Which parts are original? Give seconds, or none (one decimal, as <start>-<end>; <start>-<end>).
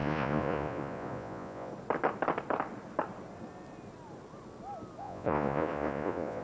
1.7-5.0